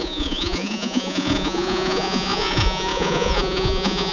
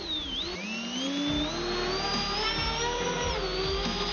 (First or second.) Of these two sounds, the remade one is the first